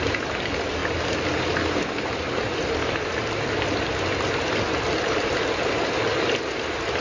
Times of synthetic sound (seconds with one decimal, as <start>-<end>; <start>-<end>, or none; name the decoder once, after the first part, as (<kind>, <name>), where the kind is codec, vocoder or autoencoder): none